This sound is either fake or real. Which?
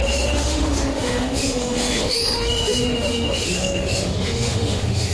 fake